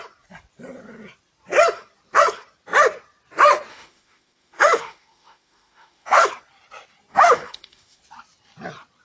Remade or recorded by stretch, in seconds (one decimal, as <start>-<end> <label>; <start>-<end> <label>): 0.0-3.7 recorded; 3.7-6.3 remade; 6.3-7.1 recorded; 7.1-8.0 remade; 8.0-9.0 recorded